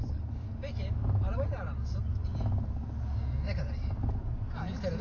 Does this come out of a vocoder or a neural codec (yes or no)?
no